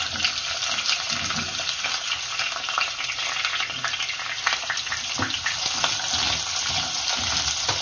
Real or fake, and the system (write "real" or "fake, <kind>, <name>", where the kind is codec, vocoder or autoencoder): real